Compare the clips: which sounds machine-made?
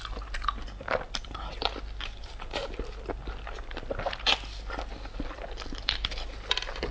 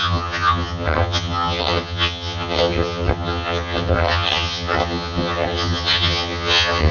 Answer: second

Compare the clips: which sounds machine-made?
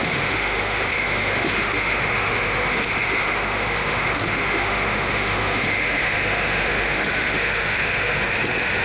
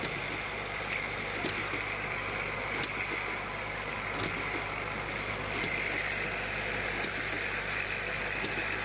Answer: first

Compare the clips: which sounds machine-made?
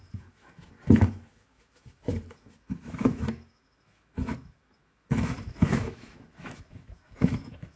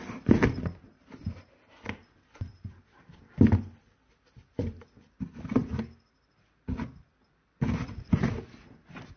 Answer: first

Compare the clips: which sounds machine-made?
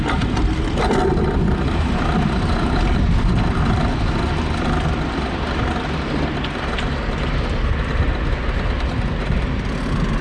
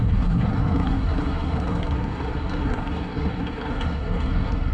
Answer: second